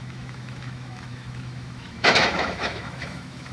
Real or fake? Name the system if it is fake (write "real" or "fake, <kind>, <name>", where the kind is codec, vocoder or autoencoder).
fake, autoencoder, DAC-VAE